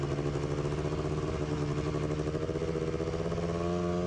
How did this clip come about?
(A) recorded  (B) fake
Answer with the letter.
A